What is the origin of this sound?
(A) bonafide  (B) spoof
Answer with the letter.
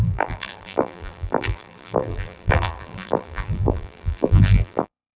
B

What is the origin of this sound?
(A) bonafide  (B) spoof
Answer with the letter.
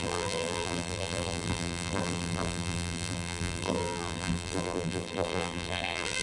B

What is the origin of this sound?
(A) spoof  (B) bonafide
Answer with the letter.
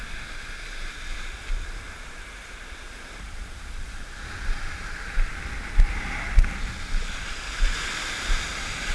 A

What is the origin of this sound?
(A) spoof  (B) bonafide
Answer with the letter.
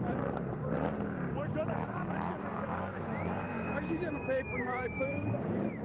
A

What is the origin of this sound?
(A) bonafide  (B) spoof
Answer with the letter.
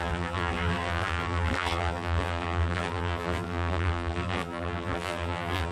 B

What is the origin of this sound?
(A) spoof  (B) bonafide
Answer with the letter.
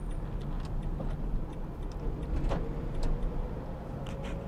B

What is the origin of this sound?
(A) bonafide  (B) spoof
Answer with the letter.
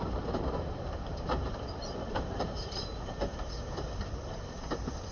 B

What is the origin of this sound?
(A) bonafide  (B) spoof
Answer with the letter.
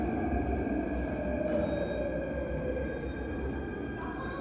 A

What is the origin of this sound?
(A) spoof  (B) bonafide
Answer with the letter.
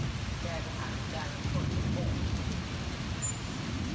A